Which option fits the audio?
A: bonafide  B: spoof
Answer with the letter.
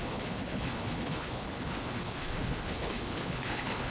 B